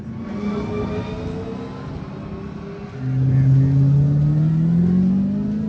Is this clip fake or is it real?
real